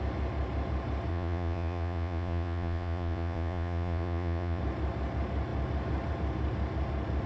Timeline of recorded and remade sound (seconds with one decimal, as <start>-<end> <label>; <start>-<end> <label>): 0.0-1.1 recorded; 1.1-4.6 remade; 4.6-7.3 recorded